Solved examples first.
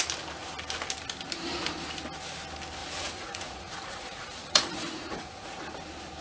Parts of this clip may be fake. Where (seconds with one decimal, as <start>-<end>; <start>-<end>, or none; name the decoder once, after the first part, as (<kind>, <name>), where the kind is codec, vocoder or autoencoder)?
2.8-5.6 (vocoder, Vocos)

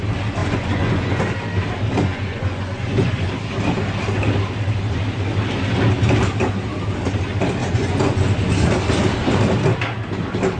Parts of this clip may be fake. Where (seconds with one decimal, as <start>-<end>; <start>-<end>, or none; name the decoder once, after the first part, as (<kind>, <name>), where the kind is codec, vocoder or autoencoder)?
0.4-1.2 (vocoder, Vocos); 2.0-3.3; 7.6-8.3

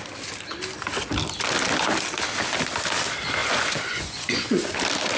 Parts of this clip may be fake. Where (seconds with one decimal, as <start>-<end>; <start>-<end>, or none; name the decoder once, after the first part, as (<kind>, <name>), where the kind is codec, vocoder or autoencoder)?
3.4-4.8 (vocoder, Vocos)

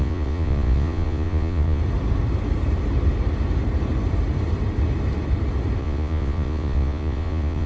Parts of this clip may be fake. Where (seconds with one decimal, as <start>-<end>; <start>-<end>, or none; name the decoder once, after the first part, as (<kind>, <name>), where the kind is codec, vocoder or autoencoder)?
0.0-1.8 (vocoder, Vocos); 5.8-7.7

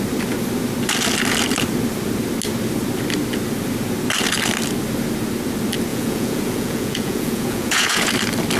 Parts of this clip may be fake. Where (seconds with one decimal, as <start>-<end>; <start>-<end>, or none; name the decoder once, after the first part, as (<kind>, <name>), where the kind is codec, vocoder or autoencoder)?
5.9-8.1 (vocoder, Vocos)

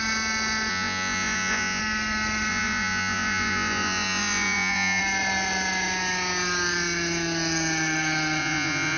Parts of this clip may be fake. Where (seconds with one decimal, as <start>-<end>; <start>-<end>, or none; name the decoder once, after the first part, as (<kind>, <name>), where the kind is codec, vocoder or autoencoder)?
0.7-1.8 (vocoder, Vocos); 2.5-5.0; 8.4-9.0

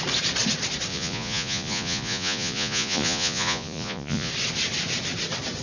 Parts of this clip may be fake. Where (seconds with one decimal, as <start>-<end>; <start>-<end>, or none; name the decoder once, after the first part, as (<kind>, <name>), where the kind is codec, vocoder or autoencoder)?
0.9-4.3 (vocoder, Vocos)